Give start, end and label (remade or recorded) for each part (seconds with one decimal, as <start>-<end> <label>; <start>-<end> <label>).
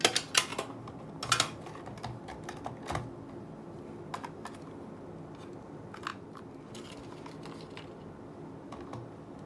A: 0.0-9.5 recorded